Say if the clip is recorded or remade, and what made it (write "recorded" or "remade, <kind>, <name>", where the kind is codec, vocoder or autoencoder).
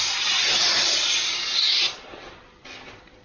recorded